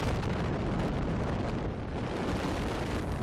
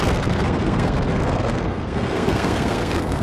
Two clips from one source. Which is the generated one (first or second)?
second